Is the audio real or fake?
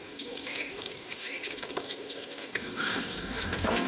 fake